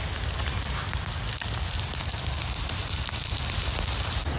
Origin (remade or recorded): recorded